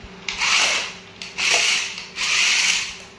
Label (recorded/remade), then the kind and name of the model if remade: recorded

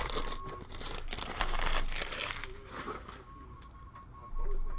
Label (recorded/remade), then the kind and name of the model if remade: recorded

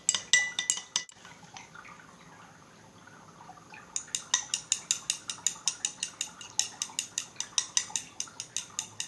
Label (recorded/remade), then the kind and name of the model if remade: recorded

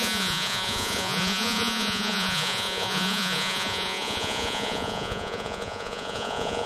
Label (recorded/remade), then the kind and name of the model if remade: remade, vocoder, Vocos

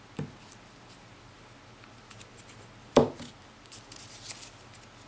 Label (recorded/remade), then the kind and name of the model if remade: recorded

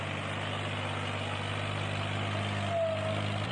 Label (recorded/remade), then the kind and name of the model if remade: recorded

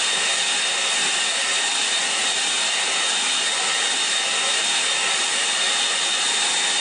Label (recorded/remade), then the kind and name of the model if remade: recorded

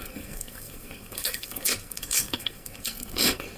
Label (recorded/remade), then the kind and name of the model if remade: remade, codec, SNAC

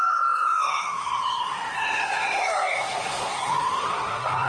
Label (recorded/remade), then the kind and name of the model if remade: remade, codec, SNAC